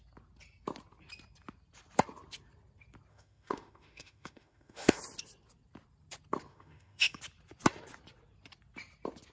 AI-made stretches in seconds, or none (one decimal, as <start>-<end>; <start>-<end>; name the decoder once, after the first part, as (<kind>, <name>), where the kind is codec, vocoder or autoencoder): 3.1-5.0 (autoencoder, DAC-VAE); 6.5-7.2